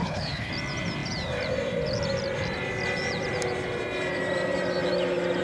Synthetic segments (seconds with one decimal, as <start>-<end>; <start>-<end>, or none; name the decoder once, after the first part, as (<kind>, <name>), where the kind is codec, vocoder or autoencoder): 0.0-0.5 (codec, HILCodec)